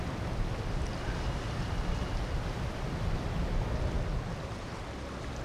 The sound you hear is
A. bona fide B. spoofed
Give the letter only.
A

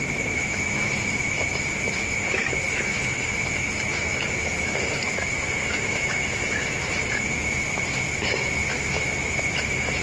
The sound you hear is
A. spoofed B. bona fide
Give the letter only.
A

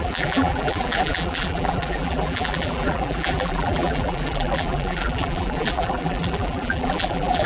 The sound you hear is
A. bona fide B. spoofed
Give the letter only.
B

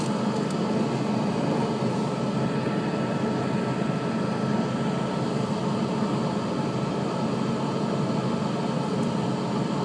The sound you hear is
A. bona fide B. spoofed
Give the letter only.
A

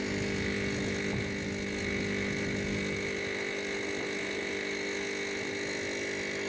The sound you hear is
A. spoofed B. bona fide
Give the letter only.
B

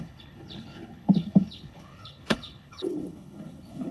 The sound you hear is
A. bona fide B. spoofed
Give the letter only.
B